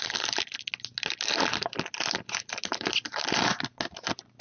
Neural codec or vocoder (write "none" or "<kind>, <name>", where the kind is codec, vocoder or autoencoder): none